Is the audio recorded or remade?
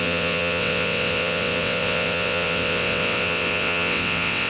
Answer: remade